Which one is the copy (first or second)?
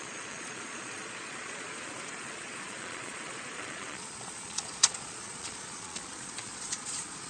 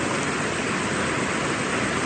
first